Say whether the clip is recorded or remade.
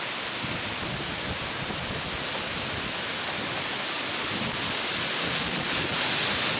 recorded